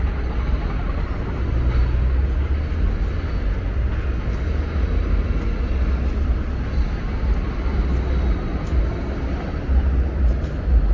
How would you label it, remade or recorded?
recorded